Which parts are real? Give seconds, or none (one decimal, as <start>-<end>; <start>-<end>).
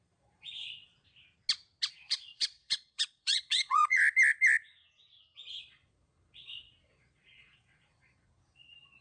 0.9-1.9; 4.0-5.6